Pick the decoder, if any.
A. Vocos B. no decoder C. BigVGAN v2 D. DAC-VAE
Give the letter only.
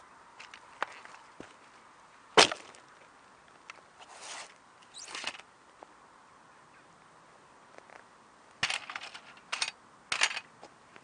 B